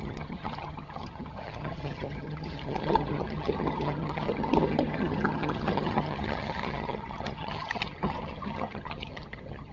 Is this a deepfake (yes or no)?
yes